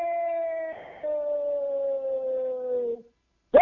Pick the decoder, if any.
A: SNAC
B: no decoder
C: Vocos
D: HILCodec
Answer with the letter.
B